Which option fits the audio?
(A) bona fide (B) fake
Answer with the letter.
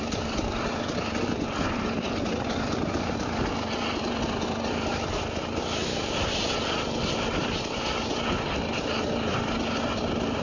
A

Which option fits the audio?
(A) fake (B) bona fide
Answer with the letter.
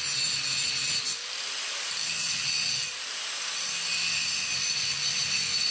B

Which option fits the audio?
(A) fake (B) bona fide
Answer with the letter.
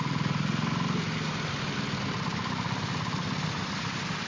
B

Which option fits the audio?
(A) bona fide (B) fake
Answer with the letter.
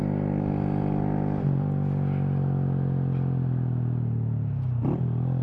A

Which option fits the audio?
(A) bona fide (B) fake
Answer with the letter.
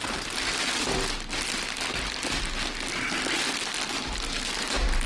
A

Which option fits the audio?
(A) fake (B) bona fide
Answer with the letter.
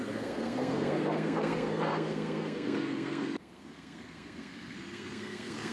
A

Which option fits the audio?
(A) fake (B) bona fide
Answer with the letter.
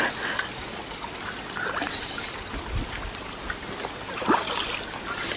B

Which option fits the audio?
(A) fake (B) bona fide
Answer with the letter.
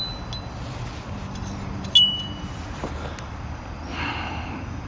B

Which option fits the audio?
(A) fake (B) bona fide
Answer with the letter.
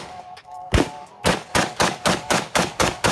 A